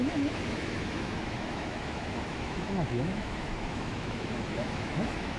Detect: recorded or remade remade